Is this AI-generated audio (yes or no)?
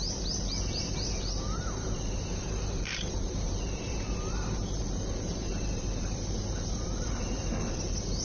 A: yes